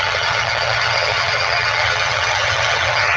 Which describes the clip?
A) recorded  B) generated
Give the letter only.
B